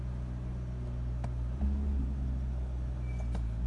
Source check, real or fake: real